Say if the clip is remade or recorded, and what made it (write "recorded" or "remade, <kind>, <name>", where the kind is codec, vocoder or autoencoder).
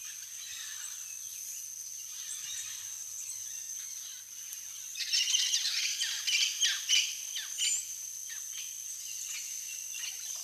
recorded